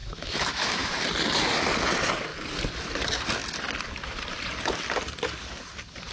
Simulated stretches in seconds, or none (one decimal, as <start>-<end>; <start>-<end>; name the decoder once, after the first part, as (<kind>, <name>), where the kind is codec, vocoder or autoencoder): 0.0-1.0 (autoencoder, DAC-VAE)